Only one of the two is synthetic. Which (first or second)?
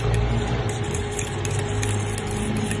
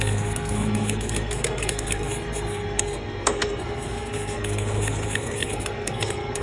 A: second